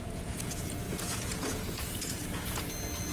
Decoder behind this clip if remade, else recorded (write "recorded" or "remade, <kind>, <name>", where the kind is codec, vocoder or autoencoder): remade, vocoder, Vocos